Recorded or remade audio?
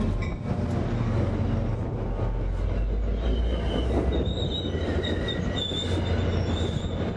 recorded